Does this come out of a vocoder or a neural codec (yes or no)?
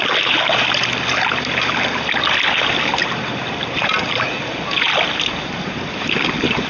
no